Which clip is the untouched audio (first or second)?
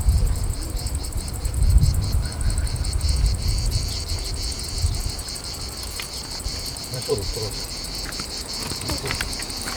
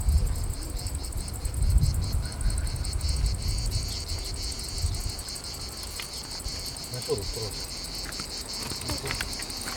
second